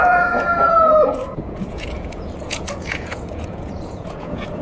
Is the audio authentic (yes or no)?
no